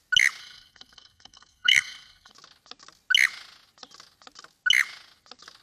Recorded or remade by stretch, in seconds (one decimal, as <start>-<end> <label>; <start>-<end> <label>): 0.0-0.4 recorded; 0.4-2.3 remade; 2.3-5.6 recorded